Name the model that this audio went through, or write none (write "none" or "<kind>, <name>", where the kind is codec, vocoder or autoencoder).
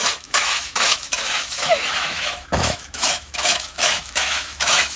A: autoencoder, DAC-VAE